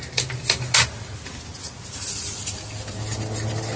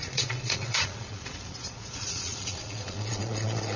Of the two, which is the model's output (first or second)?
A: second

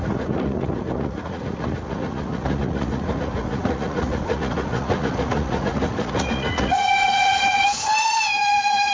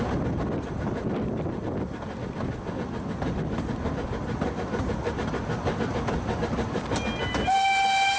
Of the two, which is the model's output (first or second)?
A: first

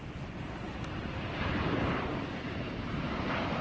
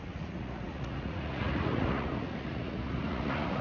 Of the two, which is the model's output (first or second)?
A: second